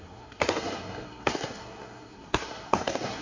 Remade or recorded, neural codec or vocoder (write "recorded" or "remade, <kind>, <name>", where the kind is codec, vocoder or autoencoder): remade, codec, SNAC